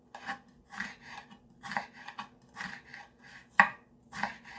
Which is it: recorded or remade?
recorded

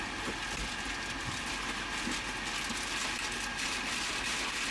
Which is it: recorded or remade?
recorded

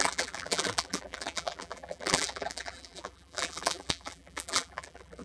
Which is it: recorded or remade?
remade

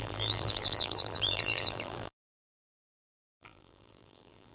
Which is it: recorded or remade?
remade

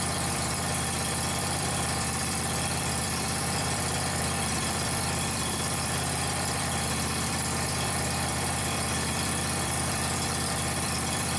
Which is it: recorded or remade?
remade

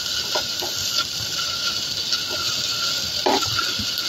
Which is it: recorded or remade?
recorded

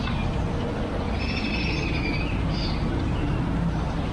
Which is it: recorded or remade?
recorded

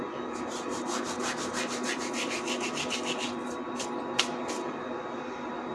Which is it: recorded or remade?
recorded